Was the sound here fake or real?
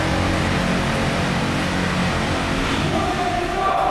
real